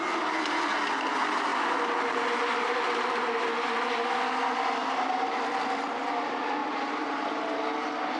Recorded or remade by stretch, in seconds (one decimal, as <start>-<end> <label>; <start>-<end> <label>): 0.0-1.5 recorded; 1.5-6.1 remade; 6.1-6.6 recorded; 6.6-7.4 remade; 7.4-8.2 recorded